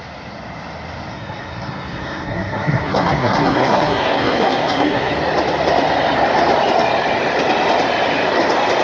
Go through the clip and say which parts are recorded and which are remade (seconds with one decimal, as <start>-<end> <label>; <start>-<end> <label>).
0.0-1.1 recorded; 1.1-5.1 remade; 5.1-8.8 recorded